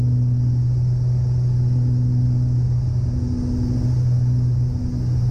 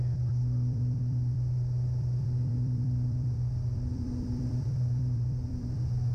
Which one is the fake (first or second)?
second